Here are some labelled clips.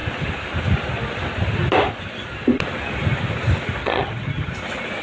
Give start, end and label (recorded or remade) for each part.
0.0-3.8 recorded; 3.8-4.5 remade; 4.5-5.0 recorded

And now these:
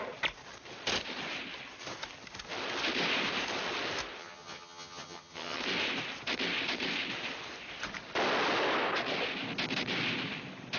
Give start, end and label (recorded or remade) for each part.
0.0-4.2 recorded; 4.2-5.6 remade; 5.6-10.8 recorded

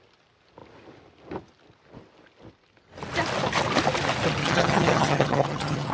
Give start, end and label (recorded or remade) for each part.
0.0-4.4 recorded; 4.4-5.9 remade

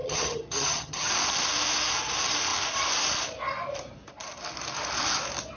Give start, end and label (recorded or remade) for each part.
0.0-1.1 remade; 1.1-5.6 recorded

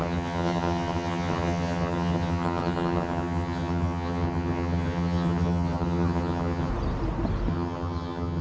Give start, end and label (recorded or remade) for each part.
0.0-6.7 remade; 6.7-7.5 recorded; 7.5-8.4 remade